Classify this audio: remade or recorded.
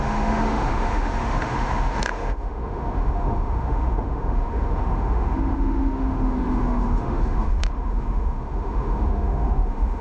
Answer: remade